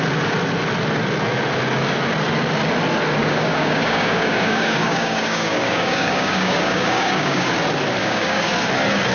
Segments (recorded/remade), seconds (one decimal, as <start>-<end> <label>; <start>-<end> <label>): 0.0-3.2 recorded; 3.2-7.5 remade; 7.5-8.0 recorded; 8.0-8.5 remade; 8.5-9.1 recorded